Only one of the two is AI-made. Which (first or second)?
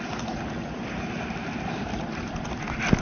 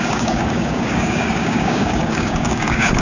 second